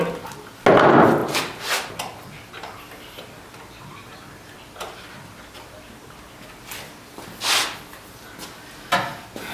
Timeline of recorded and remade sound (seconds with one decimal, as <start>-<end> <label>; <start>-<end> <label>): 0.0-9.5 recorded